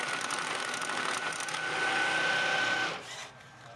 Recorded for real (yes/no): yes